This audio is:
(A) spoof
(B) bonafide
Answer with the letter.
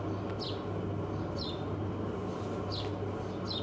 B